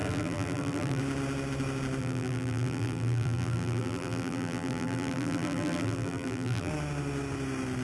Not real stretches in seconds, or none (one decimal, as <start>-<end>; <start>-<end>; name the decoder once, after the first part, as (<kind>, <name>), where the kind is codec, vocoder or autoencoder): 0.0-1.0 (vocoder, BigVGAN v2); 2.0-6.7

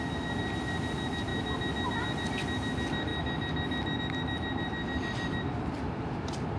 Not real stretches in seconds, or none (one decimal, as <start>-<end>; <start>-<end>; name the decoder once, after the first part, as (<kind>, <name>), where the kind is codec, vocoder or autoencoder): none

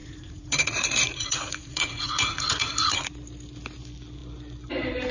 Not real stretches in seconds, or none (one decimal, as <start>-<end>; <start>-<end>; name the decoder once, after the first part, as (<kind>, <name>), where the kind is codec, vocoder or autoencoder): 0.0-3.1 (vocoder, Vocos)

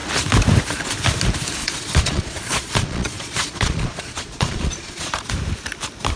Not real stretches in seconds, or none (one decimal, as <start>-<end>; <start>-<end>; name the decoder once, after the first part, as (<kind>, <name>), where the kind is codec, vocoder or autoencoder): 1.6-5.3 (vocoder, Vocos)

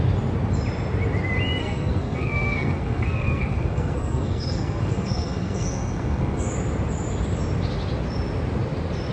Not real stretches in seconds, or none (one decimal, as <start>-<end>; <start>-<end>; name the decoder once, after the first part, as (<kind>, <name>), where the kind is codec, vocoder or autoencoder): 1.6-6.5 (codec, SNAC)

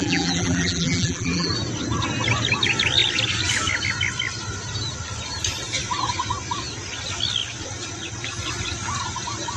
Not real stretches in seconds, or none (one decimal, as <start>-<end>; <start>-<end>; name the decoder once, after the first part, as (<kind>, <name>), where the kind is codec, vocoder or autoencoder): 0.0-1.5 (vocoder, BigVGAN v2)